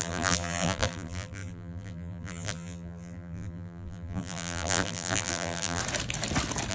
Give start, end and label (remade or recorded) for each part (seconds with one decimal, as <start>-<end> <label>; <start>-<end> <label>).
0.0-5.8 remade; 5.8-6.7 recorded

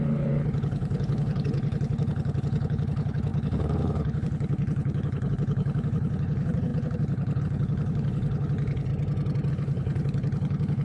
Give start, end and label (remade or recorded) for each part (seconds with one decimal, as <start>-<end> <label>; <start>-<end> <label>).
0.0-8.9 remade; 8.9-9.5 recorded; 9.5-10.8 remade

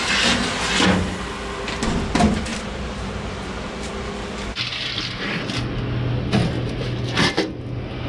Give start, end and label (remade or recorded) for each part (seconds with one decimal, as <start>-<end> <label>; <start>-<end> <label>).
0.0-2.5 recorded; 2.5-4.0 remade; 4.0-8.1 recorded

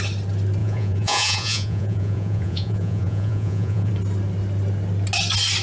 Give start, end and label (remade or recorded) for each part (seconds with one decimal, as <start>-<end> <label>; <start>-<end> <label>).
0.0-0.6 recorded; 0.6-3.9 remade; 3.9-5.6 recorded